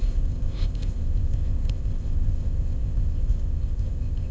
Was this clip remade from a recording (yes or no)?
yes